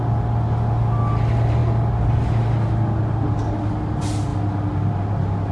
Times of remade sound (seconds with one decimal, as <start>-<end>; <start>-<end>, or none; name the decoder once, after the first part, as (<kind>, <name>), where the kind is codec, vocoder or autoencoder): none